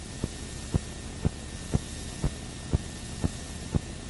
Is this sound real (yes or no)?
yes